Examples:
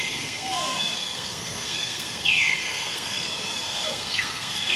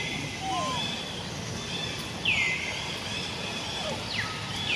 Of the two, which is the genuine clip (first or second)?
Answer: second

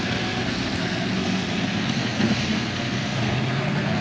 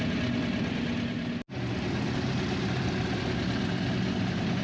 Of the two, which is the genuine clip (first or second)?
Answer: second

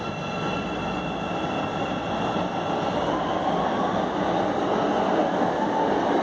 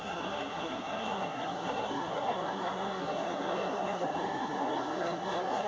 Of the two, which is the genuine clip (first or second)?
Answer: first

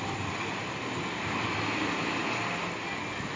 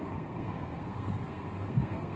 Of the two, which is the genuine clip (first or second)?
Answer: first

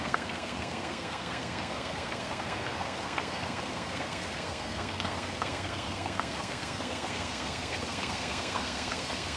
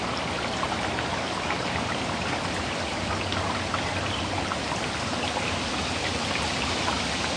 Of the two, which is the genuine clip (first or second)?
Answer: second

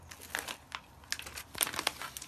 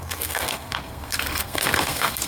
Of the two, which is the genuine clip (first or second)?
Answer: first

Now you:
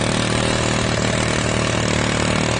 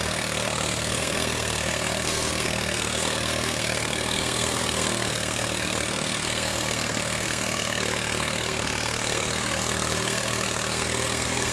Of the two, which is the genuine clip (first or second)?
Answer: first